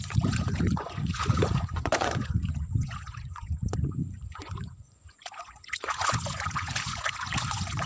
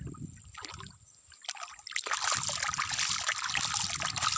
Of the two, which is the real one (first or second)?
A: second